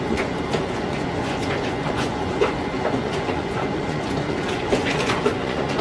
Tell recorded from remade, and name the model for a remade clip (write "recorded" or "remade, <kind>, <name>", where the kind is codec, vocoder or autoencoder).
remade, vocoder, Vocos